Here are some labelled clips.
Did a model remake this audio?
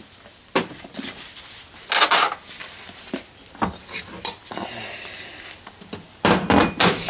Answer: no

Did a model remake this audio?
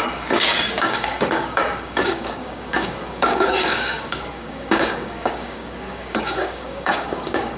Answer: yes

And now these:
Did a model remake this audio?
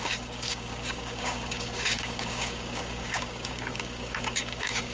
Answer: yes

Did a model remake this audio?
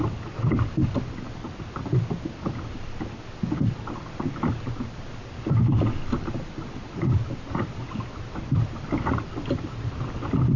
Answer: no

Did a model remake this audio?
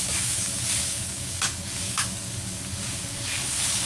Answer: yes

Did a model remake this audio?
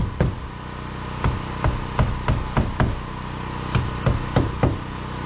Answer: no